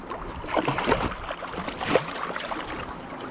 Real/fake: real